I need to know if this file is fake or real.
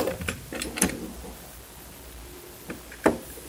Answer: real